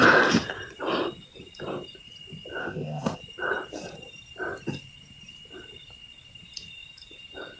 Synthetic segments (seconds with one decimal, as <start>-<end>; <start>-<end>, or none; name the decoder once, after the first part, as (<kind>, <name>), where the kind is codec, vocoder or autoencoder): 2.6-3.2 (codec, ZipCodec)